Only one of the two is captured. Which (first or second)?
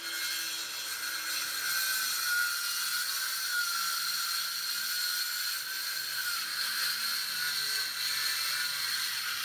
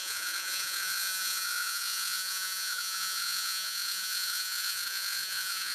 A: first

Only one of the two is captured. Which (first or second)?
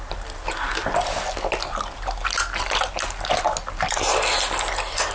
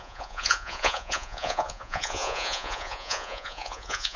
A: first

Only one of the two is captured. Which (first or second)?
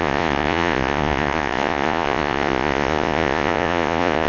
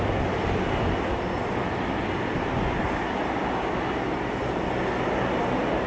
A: second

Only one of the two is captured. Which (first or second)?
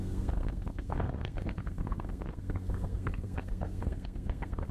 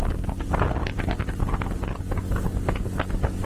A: second